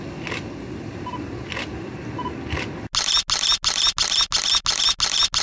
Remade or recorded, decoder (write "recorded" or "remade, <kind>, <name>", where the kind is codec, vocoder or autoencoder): recorded